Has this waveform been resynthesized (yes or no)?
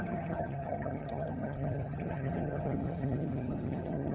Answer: yes